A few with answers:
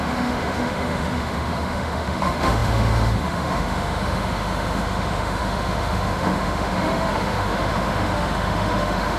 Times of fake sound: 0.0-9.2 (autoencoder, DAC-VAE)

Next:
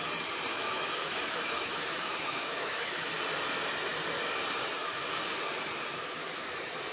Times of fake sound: 0.5-3.1 (autoencoder, DAC-VAE)

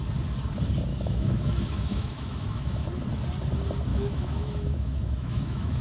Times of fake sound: 0.9-2.9 (autoencoder, DAC-VAE); 3.9-5.8

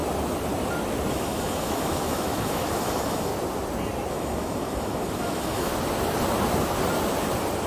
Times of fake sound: 1.1-3.3 (autoencoder, DAC-VAE); 4.1-5.7

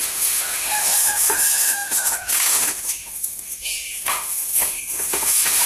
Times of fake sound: 0.0-5.7 (autoencoder, DAC-VAE)

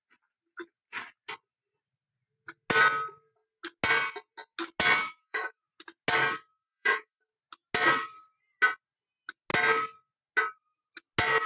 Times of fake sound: 5.0-5.6 (autoencoder, DAC-VAE); 6.5-7.3